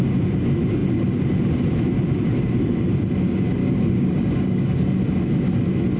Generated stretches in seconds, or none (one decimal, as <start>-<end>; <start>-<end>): 3.6-4.8